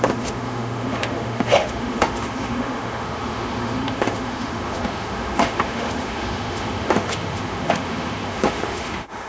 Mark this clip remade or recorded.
remade